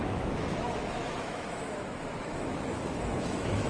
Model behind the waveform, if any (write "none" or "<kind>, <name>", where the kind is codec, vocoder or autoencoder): autoencoder, DAC-VAE